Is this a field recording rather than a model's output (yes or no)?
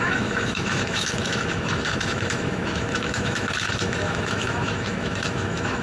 no